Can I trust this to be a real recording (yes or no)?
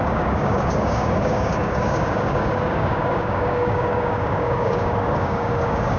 no